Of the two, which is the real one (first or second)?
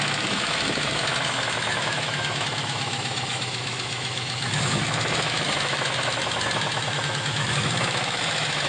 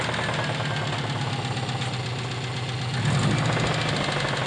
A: second